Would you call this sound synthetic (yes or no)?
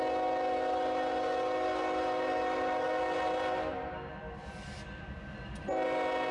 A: no